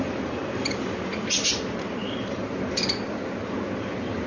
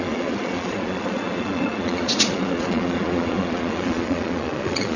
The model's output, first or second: second